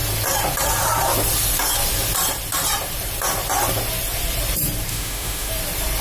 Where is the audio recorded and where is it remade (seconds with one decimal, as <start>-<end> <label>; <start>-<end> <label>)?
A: 0.0-4.9 recorded; 4.9-5.5 remade; 5.5-6.0 recorded